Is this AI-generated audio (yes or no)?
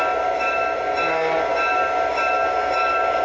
no